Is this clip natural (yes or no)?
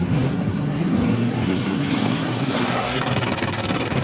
no